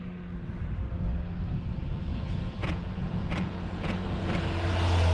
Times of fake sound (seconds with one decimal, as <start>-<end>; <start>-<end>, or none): 2.1-4.2